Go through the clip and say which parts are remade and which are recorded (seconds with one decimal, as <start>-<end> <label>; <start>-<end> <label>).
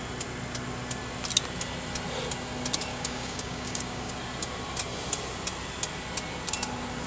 0.0-2.9 recorded; 2.9-4.1 remade; 4.1-7.1 recorded